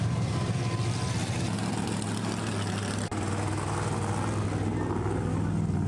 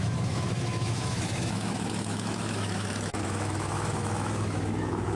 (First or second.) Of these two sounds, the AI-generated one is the second